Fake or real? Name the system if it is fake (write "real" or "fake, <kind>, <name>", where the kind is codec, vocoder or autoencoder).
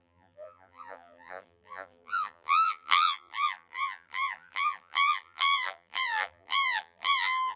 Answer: fake, vocoder, BigVGAN v2